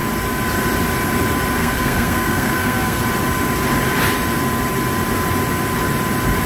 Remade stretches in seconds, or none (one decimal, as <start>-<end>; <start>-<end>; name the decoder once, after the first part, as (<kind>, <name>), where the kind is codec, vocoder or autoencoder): 1.6-3.0 (codec, SNAC)